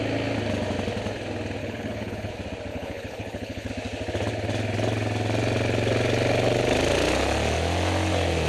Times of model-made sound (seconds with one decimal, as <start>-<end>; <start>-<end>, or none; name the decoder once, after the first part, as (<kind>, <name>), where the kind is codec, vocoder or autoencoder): 1.6-2.3 (codec, HILCodec); 2.7-3.7